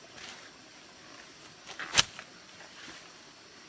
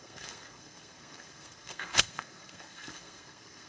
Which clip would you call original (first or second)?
first